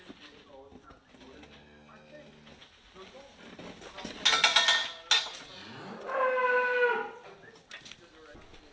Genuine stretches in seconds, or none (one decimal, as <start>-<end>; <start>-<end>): 0.0-8.7